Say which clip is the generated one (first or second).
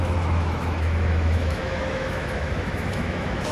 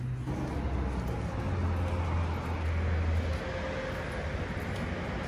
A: first